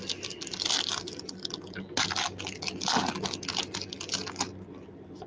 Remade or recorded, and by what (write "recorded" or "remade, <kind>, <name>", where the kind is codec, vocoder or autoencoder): recorded